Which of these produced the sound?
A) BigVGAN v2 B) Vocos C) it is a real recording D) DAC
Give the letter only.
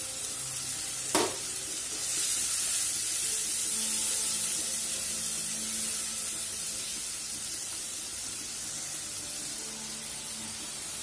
C